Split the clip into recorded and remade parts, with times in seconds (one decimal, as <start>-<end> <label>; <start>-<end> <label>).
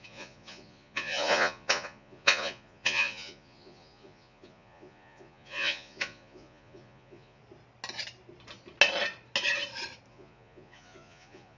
0.0-7.4 remade; 7.4-10.1 recorded; 10.1-11.6 remade